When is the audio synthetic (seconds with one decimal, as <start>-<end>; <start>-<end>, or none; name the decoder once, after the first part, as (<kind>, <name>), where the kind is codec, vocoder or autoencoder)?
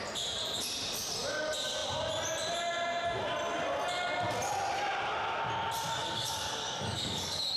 6.0-7.6 (codec, DAC)